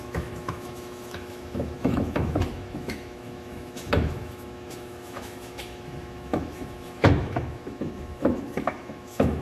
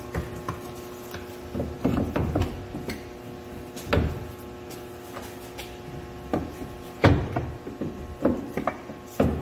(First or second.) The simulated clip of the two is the first